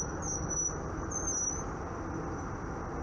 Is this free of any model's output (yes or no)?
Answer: yes